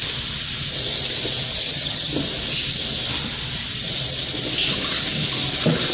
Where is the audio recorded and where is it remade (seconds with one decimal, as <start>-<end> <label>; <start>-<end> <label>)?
0.0-1.6 recorded; 1.6-2.1 remade; 2.1-5.9 recorded